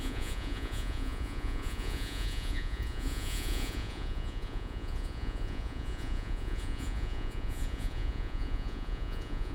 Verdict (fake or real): fake